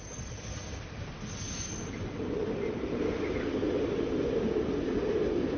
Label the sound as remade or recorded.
recorded